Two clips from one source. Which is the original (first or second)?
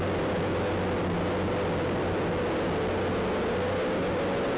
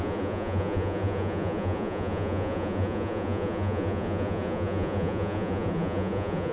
first